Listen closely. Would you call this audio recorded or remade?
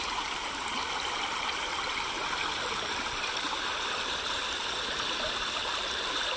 recorded